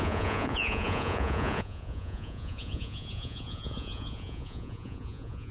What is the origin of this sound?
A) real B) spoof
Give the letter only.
B